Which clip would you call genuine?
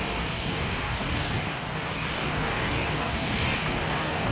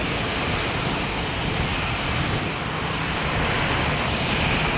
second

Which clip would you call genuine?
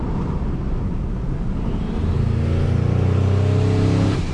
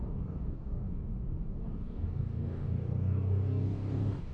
first